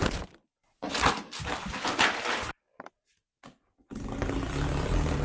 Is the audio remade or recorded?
recorded